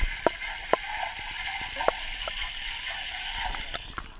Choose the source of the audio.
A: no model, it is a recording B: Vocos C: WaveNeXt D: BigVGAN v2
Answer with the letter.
A